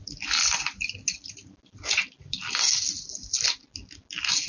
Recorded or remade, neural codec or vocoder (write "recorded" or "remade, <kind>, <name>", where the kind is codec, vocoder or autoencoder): recorded